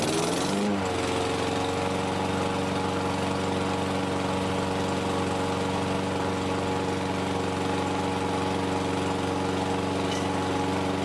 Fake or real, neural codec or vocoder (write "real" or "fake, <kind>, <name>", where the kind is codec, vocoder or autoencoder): real